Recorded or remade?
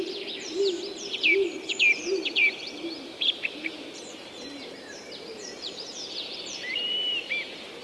remade